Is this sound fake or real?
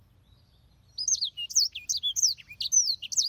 real